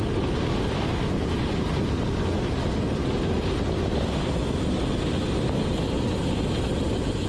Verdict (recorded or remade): recorded